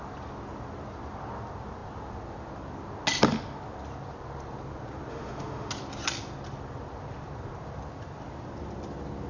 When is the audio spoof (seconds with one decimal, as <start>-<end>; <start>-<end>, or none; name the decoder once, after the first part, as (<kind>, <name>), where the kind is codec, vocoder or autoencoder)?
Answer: 5.1-5.7 (autoencoder, DAC-VAE)